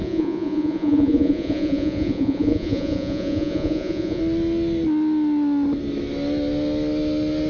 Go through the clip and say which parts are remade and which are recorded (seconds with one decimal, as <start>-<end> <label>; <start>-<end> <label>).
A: 0.0-4.2 remade; 4.2-7.5 recorded